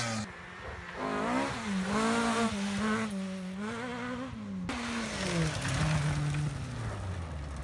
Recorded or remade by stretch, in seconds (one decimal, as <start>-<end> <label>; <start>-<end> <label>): 0.0-7.6 recorded